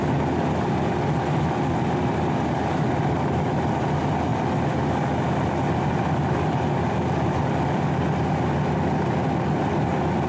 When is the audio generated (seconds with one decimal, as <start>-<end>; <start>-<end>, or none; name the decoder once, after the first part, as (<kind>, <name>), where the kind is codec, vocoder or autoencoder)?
none